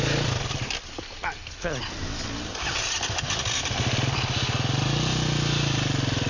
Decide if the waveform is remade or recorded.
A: recorded